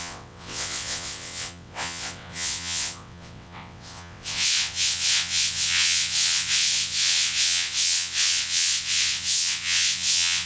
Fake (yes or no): yes